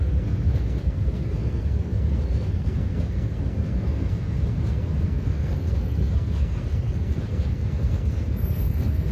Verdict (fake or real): fake